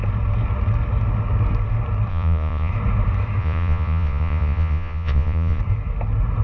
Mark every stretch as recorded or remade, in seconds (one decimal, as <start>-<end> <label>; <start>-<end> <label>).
0.0-2.1 recorded; 2.1-2.7 remade; 2.7-3.4 recorded; 3.4-5.6 remade; 5.6-6.4 recorded